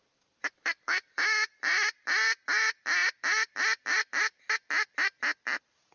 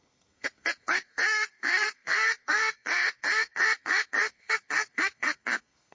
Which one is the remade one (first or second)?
second